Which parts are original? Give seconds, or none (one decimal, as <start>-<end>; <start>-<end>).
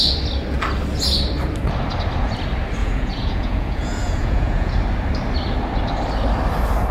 0.0-2.8; 4.7-6.9